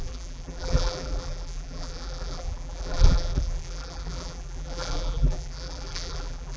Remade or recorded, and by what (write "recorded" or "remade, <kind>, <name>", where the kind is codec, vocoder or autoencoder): remade, vocoder, BigVGAN v2